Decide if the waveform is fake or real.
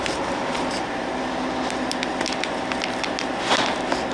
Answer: real